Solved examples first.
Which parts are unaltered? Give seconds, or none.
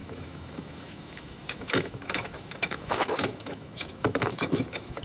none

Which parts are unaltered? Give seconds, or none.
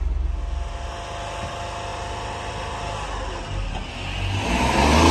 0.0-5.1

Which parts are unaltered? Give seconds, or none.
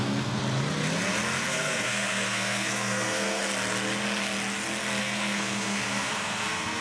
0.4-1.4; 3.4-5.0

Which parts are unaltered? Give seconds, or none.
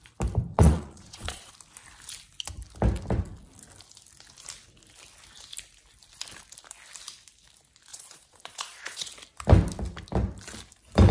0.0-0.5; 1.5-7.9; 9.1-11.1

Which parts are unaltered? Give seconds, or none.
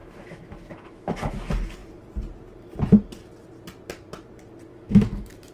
1.3-4.7